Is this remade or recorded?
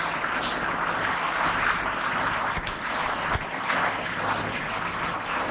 recorded